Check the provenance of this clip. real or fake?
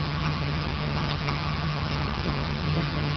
fake